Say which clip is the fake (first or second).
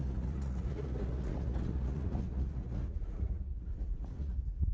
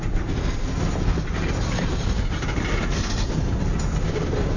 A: first